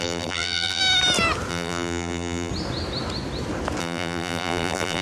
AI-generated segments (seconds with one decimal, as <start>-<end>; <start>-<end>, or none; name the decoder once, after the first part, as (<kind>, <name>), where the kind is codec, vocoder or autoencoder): 0.0-0.8 (vocoder, BigVGAN v2); 1.5-2.5; 3.8-5.0